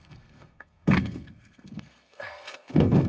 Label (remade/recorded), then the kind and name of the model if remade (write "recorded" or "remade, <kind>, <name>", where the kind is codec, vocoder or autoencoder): remade, codec, SNAC